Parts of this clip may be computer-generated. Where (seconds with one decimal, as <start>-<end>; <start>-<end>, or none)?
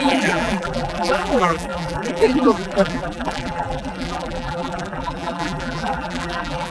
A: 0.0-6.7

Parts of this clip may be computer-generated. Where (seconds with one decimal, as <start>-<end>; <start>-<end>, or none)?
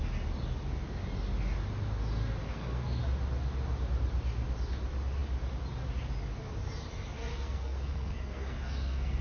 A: 2.4-3.0; 7.3-9.2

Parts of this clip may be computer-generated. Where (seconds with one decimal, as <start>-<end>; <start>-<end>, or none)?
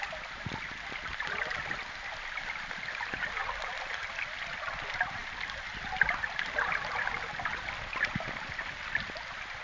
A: none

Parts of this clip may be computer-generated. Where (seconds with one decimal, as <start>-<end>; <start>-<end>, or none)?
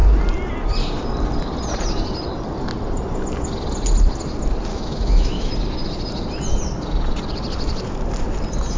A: 4.7-5.5